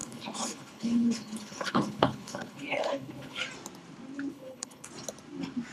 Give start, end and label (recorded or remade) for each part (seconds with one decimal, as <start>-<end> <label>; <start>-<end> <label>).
0.0-3.4 remade; 3.4-4.3 recorded; 4.3-4.9 remade; 4.9-5.7 recorded